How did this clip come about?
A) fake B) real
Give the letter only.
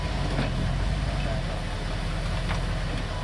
B